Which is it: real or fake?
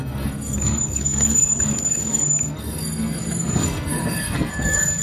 fake